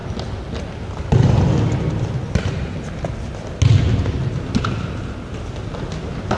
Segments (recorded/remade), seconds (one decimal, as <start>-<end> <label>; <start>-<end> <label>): 0.0-6.4 recorded